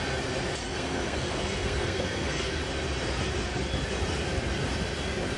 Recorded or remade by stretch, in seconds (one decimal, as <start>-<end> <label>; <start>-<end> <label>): 0.0-0.6 recorded; 0.6-2.6 remade; 2.6-5.4 recorded